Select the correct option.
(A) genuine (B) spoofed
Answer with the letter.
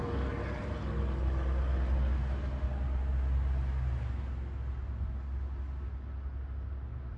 A